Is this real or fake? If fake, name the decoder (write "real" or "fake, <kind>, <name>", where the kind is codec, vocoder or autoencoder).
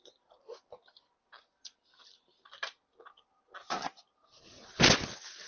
real